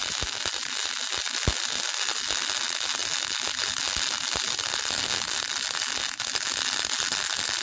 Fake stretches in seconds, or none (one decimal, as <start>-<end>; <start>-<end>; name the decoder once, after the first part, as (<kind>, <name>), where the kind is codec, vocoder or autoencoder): none